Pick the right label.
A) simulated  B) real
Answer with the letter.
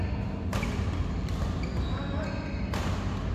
B